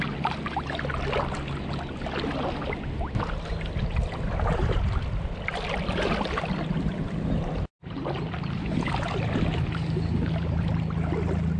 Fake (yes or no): no